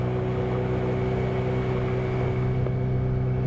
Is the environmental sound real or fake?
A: real